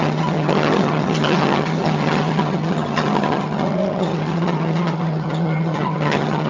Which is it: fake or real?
fake